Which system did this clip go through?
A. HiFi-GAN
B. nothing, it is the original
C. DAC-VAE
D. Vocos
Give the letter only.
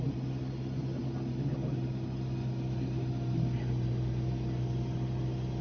B